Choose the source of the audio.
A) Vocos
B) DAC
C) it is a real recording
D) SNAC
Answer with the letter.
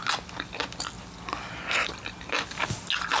C